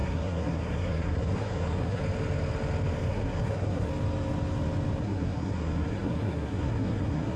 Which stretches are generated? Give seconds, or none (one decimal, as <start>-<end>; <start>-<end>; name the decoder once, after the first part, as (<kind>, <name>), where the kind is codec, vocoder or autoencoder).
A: 0.0-2.0 (codec, SNAC); 3.1-3.9; 5.0-7.4